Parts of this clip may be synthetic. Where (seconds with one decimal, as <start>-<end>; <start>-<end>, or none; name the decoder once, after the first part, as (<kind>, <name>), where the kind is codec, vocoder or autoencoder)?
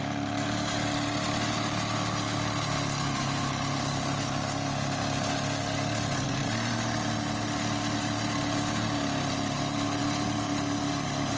none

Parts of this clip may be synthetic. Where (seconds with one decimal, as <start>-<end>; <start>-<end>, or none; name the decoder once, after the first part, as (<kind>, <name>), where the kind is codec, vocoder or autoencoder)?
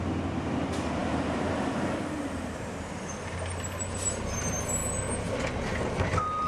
1.0-3.3 (vocoder, BigVGAN v2)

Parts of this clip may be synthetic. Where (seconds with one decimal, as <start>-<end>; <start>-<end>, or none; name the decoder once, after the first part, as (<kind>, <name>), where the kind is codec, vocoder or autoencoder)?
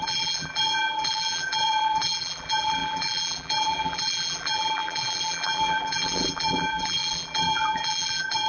0.0-8.5 (vocoder, BigVGAN v2)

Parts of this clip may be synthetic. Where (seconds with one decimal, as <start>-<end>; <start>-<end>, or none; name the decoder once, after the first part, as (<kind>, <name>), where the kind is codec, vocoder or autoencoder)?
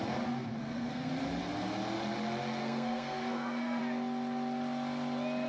0.6-1.1 (codec, SNAC); 2.6-3.8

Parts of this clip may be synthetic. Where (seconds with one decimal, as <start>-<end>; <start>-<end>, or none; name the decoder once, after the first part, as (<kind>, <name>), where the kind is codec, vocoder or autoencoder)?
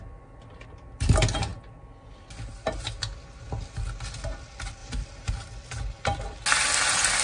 4.8-5.3 (vocoder, BigVGAN v2)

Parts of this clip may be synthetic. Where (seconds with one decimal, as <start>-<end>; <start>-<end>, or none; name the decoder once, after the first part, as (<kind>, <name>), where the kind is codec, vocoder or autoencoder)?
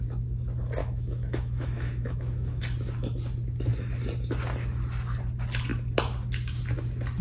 0.8-2.6 (autoencoder, DAC-VAE)